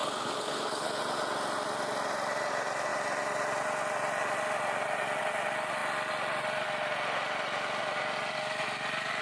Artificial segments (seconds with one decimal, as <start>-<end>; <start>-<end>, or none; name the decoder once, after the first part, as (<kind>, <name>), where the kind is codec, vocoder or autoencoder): 0.0-1.0 (codec, HILCodec)